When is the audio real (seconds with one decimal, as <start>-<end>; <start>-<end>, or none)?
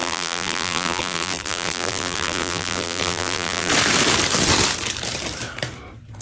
3.7-6.2